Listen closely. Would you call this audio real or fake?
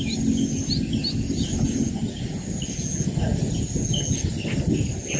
real